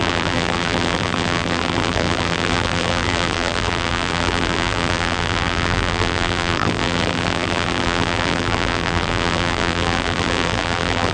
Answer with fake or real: fake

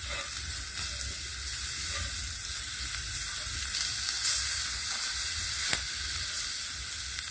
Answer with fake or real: real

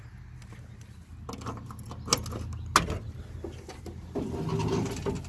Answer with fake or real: real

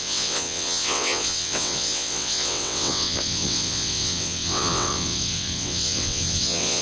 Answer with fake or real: fake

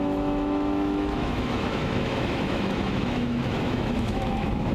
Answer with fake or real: fake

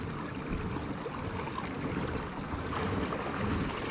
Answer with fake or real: real